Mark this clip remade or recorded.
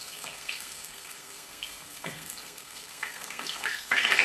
remade